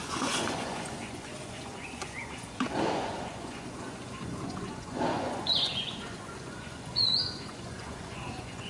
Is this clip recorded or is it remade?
remade